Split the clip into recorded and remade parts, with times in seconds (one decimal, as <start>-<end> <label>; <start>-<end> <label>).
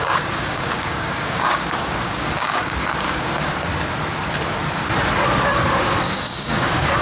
0.0-3.7 remade; 3.7-5.8 recorded; 5.8-7.0 remade